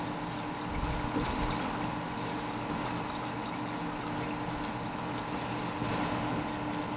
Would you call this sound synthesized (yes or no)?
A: no